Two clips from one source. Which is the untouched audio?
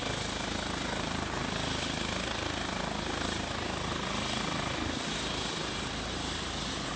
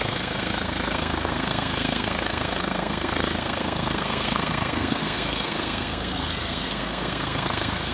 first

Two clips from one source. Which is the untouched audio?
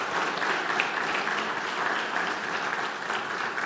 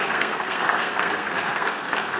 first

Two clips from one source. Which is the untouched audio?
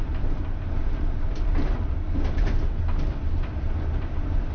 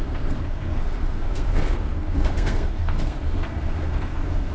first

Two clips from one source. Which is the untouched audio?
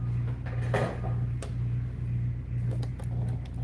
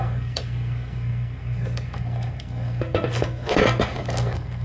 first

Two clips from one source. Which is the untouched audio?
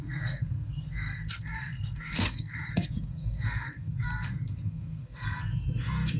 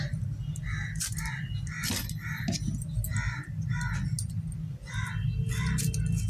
second